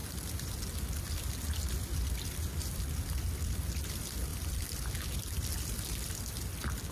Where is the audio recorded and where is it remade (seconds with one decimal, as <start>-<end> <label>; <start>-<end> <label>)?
0.0-6.9 remade